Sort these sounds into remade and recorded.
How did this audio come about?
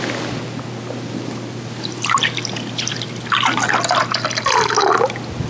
recorded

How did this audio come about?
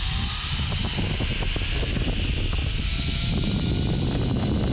recorded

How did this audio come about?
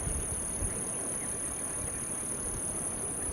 recorded